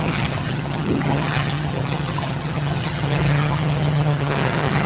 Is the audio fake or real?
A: fake